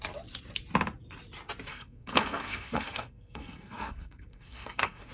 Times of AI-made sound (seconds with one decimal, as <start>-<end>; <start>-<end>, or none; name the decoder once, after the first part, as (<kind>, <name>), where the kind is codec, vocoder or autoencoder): 1.7-5.1 (codec, SNAC)